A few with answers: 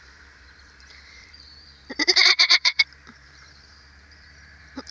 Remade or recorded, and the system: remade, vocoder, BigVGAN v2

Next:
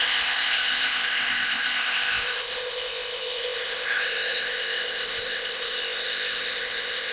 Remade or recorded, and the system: remade, codec, ZipCodec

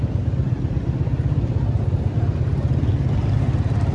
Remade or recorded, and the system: recorded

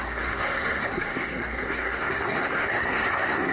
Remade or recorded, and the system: remade, codec, SNAC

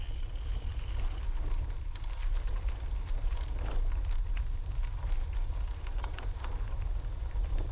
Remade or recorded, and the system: remade, vocoder, BigVGAN v2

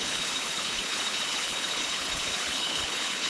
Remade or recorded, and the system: remade, codec, HILCodec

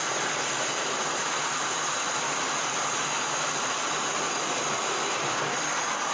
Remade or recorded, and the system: recorded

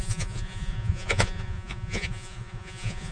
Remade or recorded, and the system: remade, vocoder, Vocos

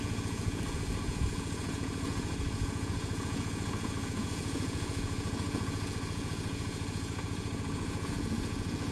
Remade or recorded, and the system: remade, vocoder, Vocos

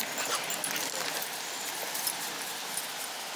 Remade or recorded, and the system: recorded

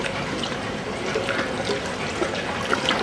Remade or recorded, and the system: recorded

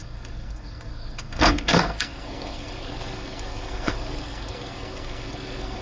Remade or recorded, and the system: remade, codec, SNAC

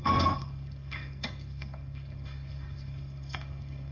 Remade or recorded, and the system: remade, codec, SNAC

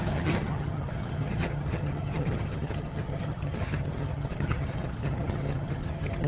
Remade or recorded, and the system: remade, vocoder, HiFi-GAN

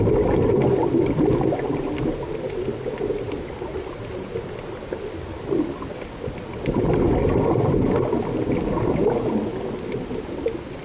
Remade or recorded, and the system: recorded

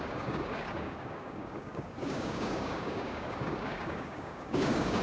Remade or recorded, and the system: remade, codec, DAC